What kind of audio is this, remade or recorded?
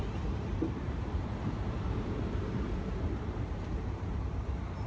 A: remade